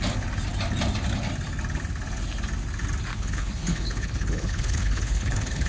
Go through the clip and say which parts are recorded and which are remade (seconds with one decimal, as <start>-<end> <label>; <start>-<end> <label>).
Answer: 0.0-3.1 recorded; 3.1-5.7 remade